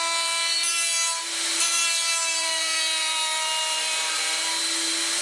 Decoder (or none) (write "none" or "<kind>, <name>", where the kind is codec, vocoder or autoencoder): vocoder, BigVGAN v2